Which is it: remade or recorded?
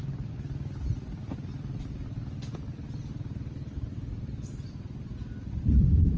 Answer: remade